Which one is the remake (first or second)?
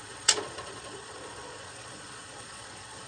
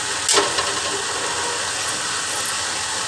first